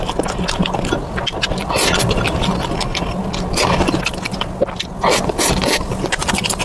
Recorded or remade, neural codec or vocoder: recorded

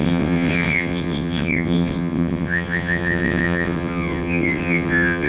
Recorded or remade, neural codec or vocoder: remade, vocoder, WaveNeXt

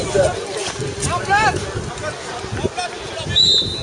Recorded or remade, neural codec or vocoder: recorded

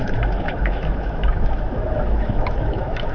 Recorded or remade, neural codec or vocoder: remade, autoencoder, DAC-VAE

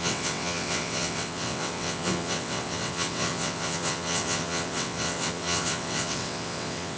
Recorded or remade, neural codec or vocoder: remade, vocoder, WaveNeXt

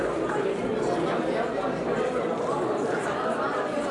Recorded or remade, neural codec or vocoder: remade, vocoder, BigVGAN v2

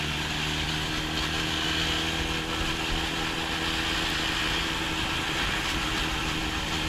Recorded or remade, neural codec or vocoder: recorded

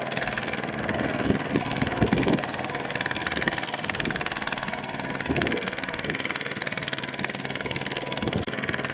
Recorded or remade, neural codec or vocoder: remade, codec, SNAC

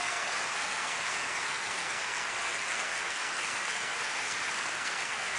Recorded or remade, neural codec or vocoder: remade, codec, SNAC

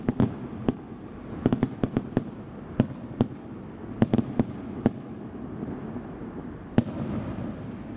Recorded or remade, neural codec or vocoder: recorded